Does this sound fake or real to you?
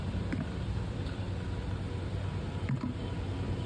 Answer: real